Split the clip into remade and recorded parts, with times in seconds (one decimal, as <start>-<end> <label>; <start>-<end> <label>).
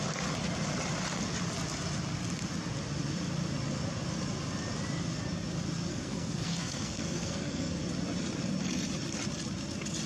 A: 0.0-5.9 recorded; 5.9-7.8 remade; 7.8-10.1 recorded